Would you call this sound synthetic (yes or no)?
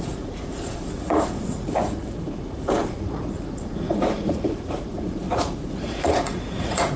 yes